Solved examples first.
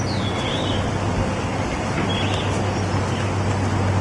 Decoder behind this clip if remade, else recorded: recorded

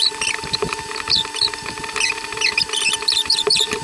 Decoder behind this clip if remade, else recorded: remade, vocoder, BigVGAN v2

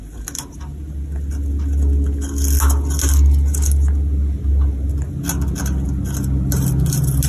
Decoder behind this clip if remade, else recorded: recorded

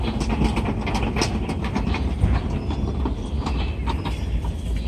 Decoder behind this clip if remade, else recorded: recorded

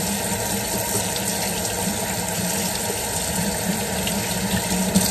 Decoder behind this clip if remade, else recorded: recorded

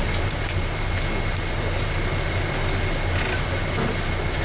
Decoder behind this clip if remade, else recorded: recorded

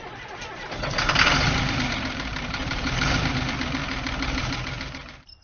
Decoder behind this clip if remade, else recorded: remade, vocoder, BigVGAN v2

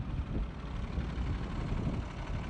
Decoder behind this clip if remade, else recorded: recorded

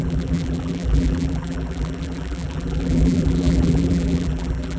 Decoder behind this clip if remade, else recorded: remade, vocoder, BigVGAN v2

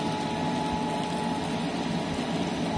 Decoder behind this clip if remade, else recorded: recorded